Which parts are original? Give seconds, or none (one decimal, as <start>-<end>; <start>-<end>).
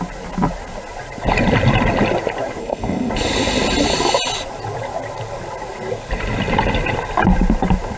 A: 0.0-2.6; 3.1-8.0